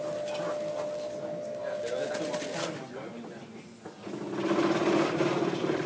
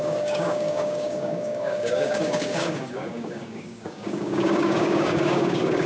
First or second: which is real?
first